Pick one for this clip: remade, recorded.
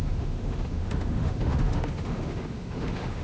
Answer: remade